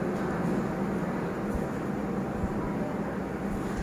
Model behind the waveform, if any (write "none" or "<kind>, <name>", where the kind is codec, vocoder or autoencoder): none